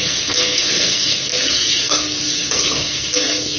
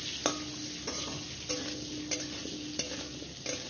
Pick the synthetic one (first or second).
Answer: first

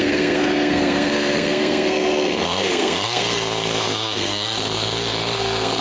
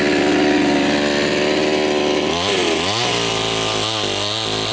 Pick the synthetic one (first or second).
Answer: first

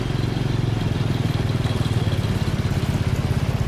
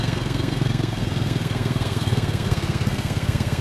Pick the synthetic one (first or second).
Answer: second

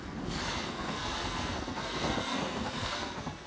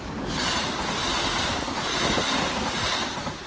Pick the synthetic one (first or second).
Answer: first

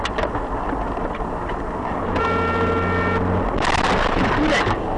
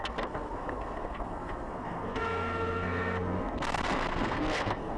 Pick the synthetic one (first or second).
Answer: second